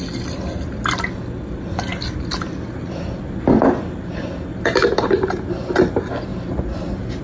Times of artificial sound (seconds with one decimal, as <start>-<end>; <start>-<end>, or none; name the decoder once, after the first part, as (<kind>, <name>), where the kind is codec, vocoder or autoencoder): 1.9-4.2 (vocoder, BigVGAN v2)